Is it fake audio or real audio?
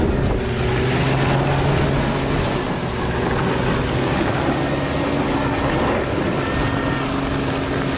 real